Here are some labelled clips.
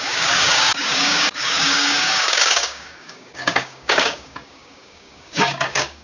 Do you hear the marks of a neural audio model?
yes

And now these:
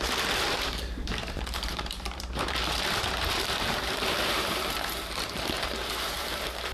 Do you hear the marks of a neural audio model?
yes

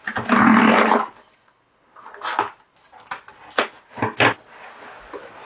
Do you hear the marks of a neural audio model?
no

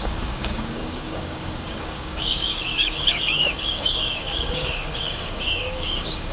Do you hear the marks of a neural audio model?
yes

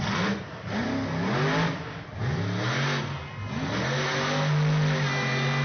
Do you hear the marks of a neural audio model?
no